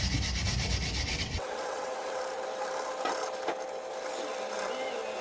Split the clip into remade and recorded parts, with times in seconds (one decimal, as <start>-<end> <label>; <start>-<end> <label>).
0.0-1.1 recorded; 1.1-2.2 remade; 2.2-5.2 recorded